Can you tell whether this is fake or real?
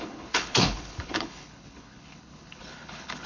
fake